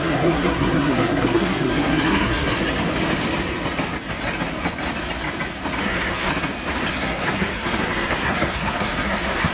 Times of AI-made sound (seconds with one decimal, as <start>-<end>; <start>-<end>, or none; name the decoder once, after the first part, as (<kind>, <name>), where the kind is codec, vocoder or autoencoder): 0.0-2.6 (codec, SNAC); 5.8-6.3; 6.9-9.5